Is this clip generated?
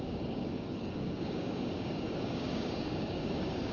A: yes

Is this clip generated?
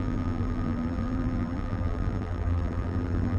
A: yes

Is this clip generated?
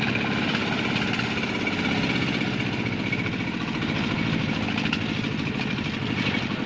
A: no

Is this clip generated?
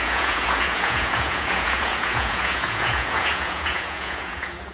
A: yes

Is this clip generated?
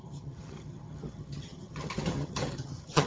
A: yes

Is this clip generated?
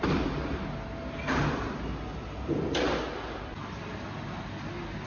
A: no